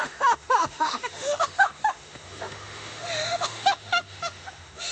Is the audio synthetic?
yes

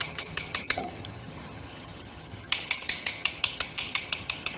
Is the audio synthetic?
yes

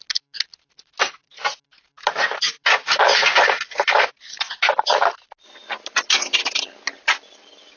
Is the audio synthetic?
no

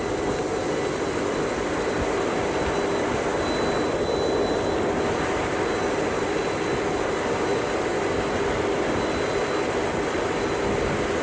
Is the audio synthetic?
no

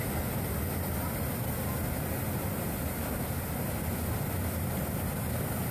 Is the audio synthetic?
no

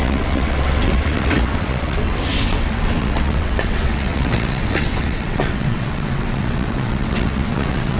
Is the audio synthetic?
yes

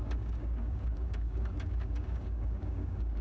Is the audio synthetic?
yes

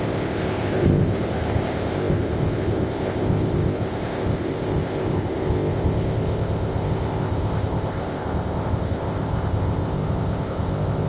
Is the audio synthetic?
yes